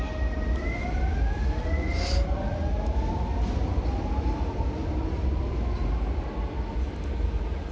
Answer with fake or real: real